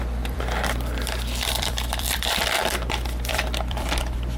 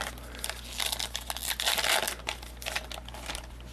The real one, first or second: second